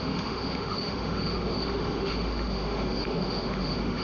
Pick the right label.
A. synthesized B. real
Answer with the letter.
A